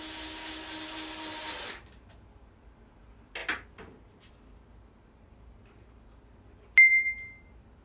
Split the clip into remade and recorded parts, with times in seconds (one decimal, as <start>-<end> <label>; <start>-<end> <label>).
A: 0.0-7.8 recorded